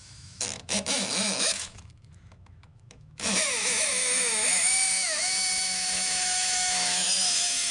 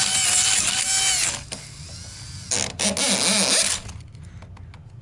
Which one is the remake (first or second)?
first